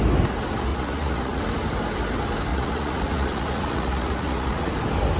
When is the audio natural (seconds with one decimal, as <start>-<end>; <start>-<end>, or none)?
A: 0.0-0.7; 1.4-2.5; 4.7-5.2